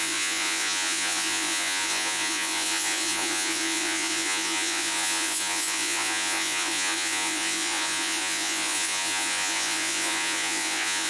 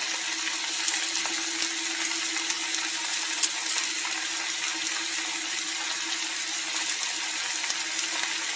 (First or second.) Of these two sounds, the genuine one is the second